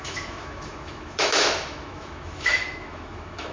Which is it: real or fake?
fake